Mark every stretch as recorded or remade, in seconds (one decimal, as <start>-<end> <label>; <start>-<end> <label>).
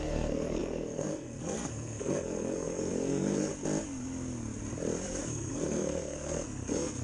0.0-3.5 remade; 3.5-5.2 recorded; 5.2-7.0 remade